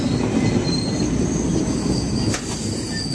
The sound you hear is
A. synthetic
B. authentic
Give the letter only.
B